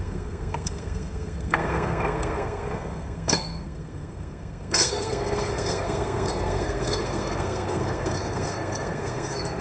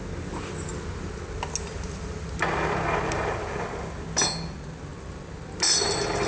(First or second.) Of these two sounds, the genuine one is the second